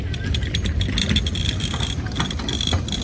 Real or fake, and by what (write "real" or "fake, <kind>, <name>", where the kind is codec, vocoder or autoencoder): real